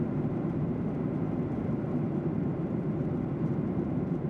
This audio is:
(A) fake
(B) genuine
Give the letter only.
A